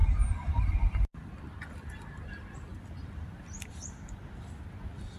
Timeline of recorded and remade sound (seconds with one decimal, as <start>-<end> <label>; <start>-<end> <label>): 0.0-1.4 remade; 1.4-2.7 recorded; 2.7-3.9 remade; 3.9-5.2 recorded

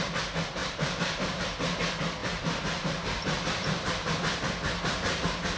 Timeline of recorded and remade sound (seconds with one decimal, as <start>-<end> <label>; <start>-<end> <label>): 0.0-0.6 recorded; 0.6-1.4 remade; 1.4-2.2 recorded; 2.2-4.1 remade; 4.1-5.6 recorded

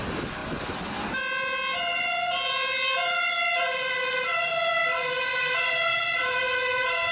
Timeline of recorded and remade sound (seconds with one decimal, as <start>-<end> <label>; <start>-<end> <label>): 0.0-7.1 recorded

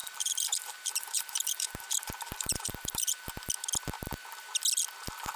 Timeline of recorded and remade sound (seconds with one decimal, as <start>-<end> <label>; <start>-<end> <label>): 0.0-3.2 remade; 3.2-5.4 recorded

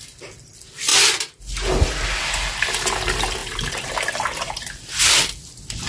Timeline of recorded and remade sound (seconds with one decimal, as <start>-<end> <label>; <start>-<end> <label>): 0.0-3.4 recorded; 3.4-3.9 remade; 3.9-5.9 recorded